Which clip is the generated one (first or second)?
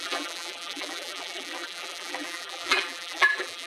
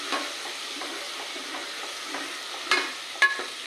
first